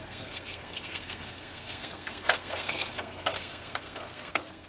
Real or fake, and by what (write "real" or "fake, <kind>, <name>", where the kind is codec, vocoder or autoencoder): fake, codec, SNAC